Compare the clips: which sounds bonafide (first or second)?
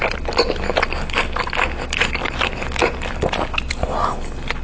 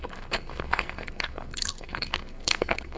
first